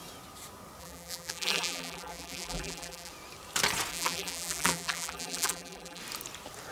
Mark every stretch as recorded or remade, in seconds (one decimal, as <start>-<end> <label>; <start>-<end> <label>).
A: 0.0-0.8 recorded; 0.8-3.1 remade; 3.1-3.9 recorded; 3.9-6.0 remade; 6.0-6.7 recorded